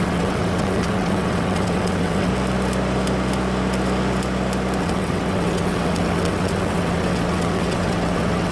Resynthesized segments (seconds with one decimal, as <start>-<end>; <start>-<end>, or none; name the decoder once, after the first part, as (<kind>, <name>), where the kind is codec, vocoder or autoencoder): 0.0-2.3 (vocoder, WaveNeXt); 4.8-8.5